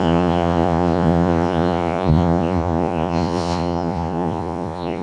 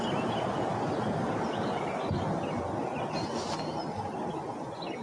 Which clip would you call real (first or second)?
second